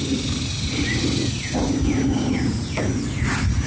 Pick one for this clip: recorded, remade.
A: recorded